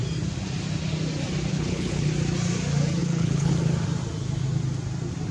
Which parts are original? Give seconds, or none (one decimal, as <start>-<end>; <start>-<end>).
0.0-1.5; 2.1-3.0; 3.5-5.3